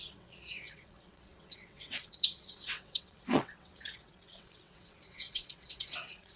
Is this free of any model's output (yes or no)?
no